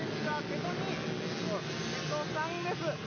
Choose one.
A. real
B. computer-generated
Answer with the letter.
A